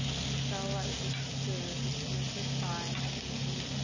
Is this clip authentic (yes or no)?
yes